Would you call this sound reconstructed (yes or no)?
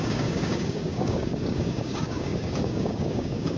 yes